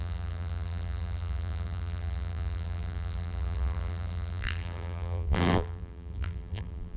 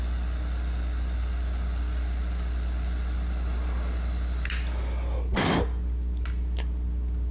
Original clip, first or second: second